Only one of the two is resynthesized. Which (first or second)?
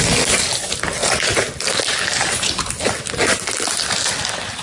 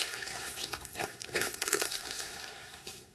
second